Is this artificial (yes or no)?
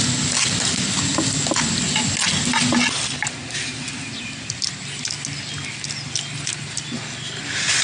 no